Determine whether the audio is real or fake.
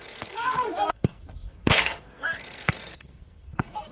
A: fake